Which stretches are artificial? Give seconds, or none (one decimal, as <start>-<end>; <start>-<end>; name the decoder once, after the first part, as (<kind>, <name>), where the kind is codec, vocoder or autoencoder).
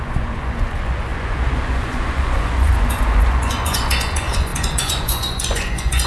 0.0-6.1 (vocoder, Vocos)